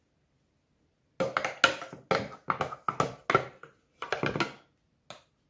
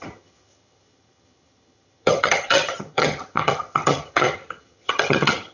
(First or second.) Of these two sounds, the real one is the first